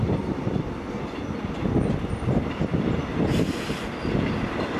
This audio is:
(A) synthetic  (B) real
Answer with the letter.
B